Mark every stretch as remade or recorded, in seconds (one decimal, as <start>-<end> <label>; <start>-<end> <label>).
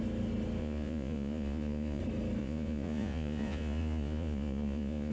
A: 0.0-0.6 recorded; 0.6-2.0 remade; 2.0-2.4 recorded; 2.4-5.1 remade